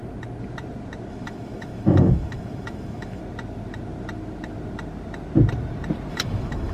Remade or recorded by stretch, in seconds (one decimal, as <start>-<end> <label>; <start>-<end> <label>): 0.0-1.1 recorded; 1.1-3.2 remade; 3.2-6.1 recorded; 6.1-6.7 remade